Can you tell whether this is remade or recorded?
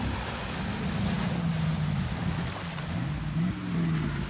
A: recorded